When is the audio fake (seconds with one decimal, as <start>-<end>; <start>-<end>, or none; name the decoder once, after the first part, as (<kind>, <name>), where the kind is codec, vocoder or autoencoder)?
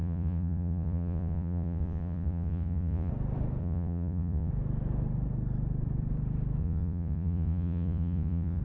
0.0-3.1 (vocoder, Vocos); 3.6-4.5; 6.6-8.6